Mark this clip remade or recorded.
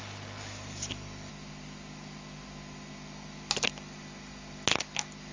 recorded